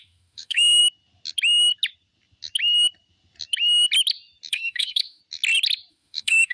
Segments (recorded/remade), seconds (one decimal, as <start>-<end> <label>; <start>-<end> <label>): 0.0-0.8 remade; 0.8-4.5 recorded; 4.5-5.2 remade; 5.2-5.9 recorded; 5.9-6.5 remade